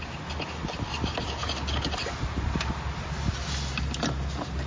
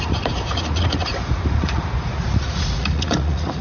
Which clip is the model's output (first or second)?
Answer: second